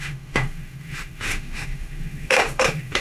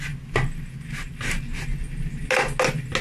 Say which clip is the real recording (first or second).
second